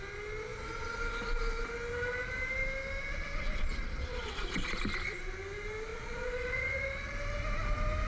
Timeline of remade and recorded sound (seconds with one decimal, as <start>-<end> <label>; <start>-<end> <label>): 0.0-3.4 recorded; 3.4-4.8 remade; 4.8-5.9 recorded; 5.9-7.1 remade; 7.1-8.1 recorded